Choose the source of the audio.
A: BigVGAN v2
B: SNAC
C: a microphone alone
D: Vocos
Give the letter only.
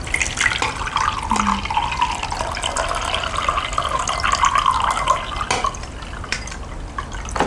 C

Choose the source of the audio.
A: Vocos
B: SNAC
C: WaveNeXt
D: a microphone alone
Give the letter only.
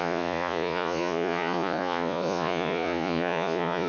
A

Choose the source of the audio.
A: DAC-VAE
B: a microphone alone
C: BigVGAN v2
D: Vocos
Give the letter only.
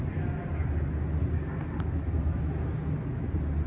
B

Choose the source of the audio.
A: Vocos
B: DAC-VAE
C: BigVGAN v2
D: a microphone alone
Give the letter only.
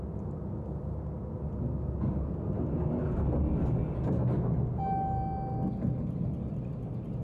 D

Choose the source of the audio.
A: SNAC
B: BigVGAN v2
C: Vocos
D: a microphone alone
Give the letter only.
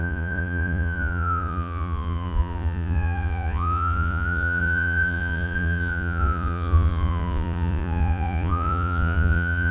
C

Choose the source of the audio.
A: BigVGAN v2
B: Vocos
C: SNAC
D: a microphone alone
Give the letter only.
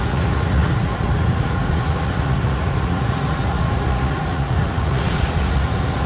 B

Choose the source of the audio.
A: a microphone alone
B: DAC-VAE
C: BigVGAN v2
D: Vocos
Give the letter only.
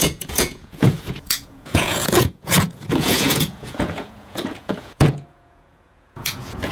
D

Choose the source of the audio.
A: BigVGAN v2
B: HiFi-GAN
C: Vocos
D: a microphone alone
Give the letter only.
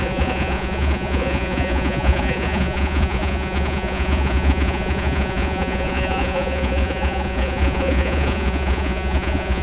C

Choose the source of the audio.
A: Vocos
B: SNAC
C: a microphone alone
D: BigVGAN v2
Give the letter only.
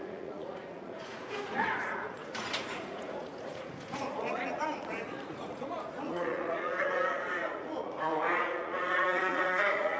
A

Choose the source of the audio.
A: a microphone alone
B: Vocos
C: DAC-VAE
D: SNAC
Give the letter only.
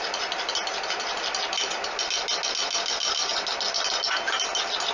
A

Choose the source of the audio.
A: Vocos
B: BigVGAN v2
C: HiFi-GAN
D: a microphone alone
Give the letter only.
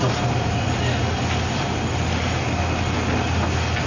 D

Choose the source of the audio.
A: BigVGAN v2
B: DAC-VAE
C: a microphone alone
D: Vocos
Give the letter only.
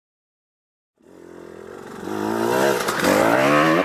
C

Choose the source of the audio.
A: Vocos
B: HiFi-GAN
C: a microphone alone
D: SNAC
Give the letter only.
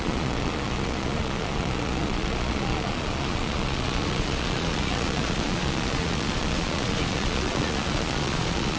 A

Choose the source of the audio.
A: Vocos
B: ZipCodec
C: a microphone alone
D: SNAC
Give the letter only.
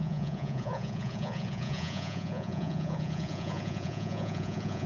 A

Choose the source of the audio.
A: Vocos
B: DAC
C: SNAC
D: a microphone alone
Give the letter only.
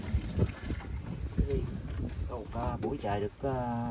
D